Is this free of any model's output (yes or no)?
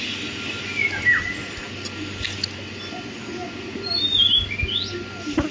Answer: yes